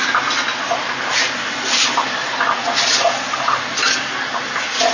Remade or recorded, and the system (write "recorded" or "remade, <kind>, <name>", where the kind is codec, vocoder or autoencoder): recorded